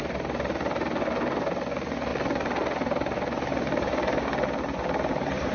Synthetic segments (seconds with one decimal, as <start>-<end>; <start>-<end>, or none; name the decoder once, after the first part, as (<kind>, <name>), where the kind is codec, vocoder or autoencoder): 0.0-2.1 (vocoder, BigVGAN v2); 5.1-5.5